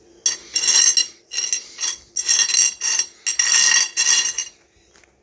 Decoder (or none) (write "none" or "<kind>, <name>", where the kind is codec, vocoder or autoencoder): none